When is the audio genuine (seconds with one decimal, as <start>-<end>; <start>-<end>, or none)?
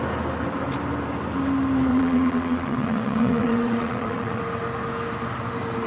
0.0-1.9; 4.4-5.9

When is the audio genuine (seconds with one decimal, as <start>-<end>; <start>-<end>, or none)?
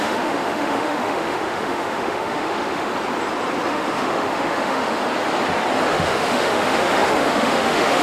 2.9-3.7; 5.0-5.9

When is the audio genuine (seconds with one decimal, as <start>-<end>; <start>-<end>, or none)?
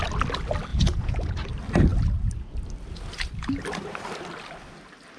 0.0-0.7; 1.3-5.2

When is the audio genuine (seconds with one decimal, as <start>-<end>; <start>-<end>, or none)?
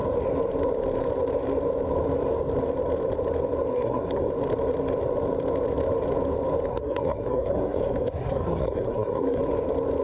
0.0-3.7; 4.3-6.7; 9.4-10.0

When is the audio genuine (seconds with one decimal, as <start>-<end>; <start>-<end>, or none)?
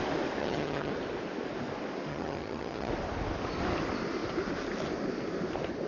0.0-0.4; 0.9-2.1; 2.9-5.9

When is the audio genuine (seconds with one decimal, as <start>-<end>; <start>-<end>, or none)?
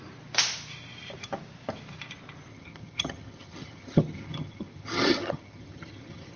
0.0-2.5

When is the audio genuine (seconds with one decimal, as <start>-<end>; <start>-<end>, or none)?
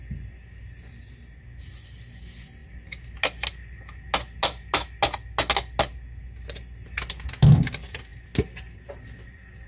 0.0-9.7